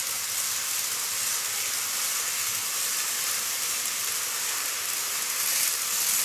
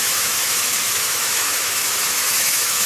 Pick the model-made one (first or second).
second